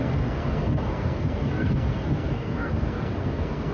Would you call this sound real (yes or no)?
no